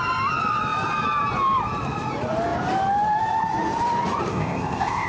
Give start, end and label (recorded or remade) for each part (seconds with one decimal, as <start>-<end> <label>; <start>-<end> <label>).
0.0-4.3 recorded; 4.3-5.1 remade